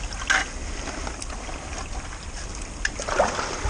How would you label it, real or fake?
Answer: real